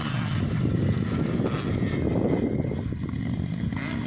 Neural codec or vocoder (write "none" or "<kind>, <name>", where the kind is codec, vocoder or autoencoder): none